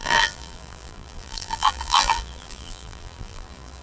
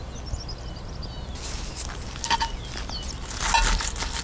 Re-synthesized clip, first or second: first